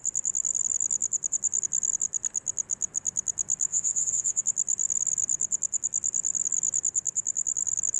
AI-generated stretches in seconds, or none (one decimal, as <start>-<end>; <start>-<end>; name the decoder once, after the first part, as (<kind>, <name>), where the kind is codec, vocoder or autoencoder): 3.7-4.4 (vocoder, Vocos)